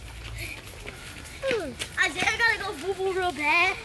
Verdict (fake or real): real